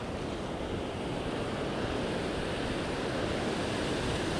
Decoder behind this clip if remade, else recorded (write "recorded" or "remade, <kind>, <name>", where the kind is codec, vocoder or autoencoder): recorded